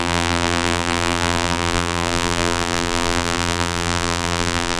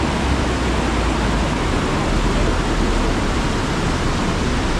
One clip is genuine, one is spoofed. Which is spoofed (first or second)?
first